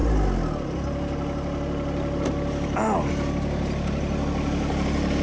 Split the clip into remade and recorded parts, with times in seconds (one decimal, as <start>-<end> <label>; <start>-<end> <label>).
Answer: 0.0-5.2 recorded